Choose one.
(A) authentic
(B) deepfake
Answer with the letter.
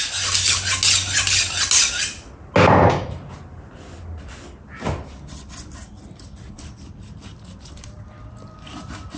A